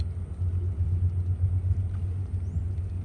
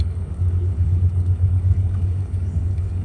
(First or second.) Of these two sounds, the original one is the first